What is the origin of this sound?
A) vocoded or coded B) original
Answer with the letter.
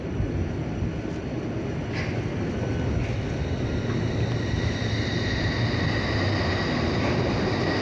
B